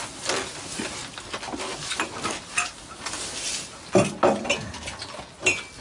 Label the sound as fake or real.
real